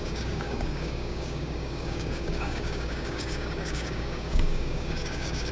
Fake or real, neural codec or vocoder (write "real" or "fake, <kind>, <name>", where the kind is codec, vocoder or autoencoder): fake, codec, DAC